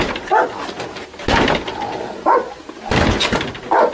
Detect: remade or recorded recorded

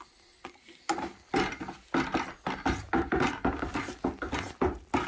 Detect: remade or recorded recorded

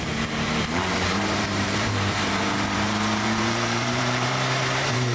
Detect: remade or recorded remade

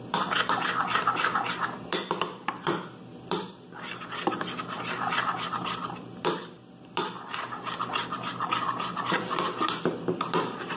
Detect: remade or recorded remade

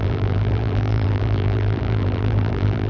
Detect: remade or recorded remade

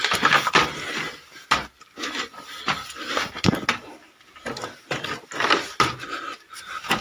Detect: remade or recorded recorded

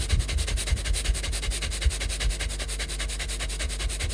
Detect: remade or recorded recorded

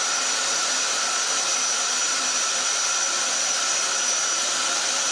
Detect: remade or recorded recorded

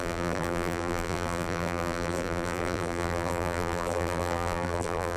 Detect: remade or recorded remade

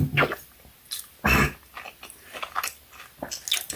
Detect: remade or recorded recorded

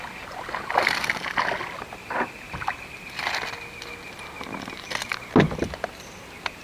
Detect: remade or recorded recorded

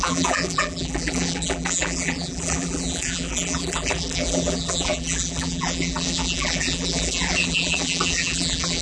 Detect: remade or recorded remade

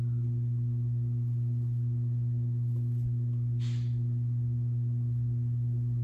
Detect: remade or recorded recorded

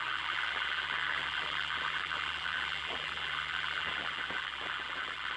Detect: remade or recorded remade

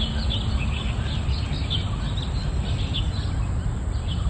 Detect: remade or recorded recorded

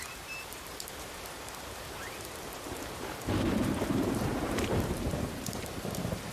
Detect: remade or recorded remade